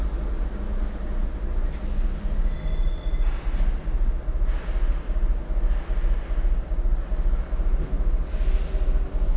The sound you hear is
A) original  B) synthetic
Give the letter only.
A